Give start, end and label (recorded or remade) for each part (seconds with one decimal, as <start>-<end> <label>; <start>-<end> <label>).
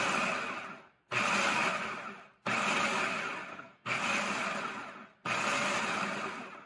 0.0-3.5 recorded; 3.5-4.0 remade; 4.0-6.7 recorded